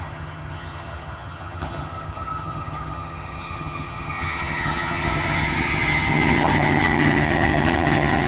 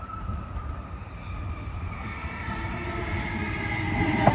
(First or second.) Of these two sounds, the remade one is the first